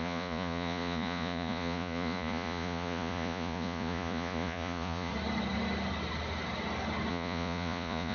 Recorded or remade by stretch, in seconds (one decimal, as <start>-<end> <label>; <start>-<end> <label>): 0.0-5.1 remade; 5.1-7.1 recorded; 7.1-8.1 remade

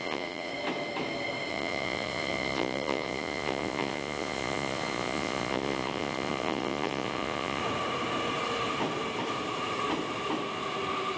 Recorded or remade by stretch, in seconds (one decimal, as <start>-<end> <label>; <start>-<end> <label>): 0.0-0.5 remade; 0.5-1.5 recorded; 1.5-7.6 remade; 7.6-11.2 recorded